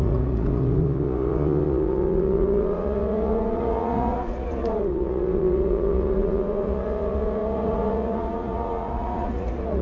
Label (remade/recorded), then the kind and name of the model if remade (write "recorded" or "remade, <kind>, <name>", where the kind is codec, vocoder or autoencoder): remade, vocoder, Vocos